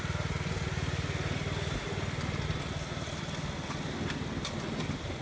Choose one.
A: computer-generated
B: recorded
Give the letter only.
B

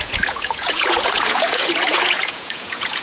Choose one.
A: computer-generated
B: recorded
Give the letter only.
A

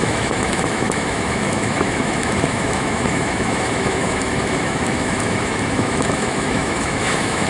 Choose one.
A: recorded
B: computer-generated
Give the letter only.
B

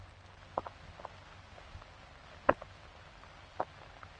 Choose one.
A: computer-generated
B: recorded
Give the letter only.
B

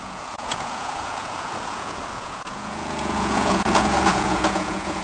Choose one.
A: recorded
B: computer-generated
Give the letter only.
B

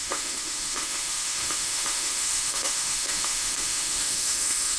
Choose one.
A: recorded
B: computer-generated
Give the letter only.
B